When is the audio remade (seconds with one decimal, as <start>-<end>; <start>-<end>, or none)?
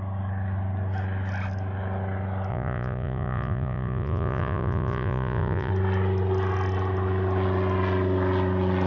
2.5-5.7